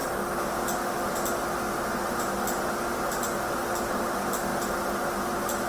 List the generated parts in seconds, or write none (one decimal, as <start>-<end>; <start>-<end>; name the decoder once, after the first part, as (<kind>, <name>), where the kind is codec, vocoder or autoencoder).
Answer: none